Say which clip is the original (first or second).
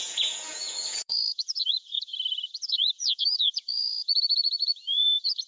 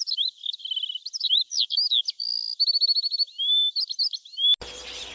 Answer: second